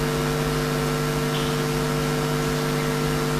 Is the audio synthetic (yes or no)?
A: no